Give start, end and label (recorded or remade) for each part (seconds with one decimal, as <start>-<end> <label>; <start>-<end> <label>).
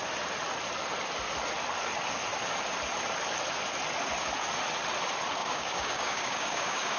0.0-5.4 recorded; 5.4-7.0 remade